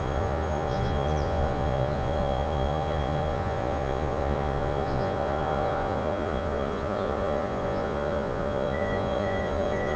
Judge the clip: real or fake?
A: fake